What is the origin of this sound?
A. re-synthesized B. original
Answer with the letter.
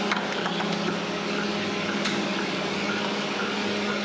A